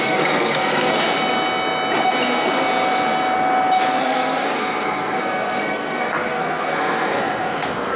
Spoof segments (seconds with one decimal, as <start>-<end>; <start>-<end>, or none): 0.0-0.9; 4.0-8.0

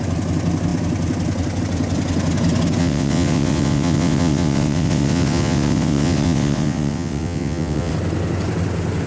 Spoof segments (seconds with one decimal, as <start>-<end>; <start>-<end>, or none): 2.8-7.9

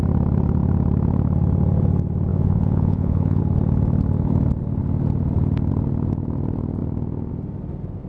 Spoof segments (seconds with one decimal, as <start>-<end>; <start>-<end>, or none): 2.3-3.4

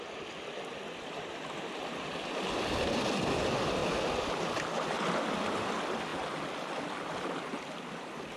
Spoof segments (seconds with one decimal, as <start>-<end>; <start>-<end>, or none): none

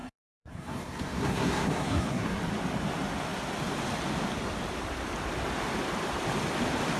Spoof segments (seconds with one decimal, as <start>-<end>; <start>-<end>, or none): 0.0-2.4

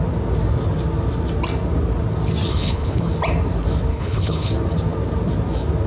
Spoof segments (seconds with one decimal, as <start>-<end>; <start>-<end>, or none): 2.5-3.1; 3.9-4.5